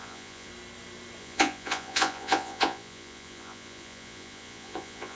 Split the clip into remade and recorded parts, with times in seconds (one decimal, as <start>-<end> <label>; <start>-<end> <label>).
0.0-0.5 remade; 0.5-1.2 recorded; 1.2-5.2 remade